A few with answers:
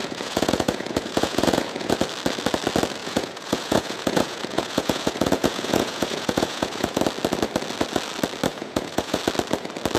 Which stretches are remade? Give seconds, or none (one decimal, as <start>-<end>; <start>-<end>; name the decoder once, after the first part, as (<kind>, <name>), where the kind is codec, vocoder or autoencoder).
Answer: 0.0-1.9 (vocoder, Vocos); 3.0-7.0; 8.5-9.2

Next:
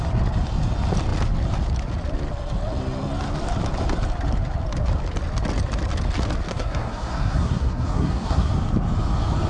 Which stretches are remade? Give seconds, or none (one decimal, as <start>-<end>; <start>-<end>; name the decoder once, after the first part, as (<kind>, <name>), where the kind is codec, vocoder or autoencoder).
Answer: 6.5-8.5 (codec, SNAC)

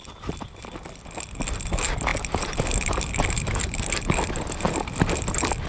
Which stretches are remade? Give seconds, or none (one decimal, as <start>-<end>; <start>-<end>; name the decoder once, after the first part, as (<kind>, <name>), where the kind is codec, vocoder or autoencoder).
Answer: none

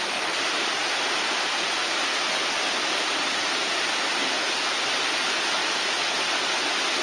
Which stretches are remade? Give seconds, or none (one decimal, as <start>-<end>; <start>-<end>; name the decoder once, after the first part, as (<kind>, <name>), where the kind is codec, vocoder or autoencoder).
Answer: 0.8-1.9 (vocoder, BigVGAN v2)

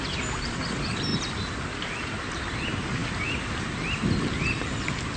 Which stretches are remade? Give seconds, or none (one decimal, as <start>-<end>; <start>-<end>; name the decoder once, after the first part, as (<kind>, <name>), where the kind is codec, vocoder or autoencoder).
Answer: 0.0-3.0 (vocoder, BigVGAN v2); 3.6-5.2